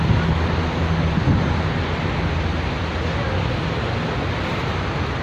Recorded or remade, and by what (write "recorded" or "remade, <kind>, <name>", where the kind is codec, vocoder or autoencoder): recorded